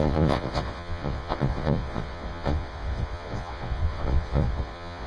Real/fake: fake